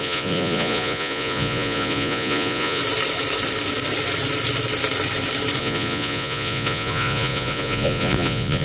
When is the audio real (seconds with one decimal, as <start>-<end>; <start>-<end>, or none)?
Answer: 2.8-5.6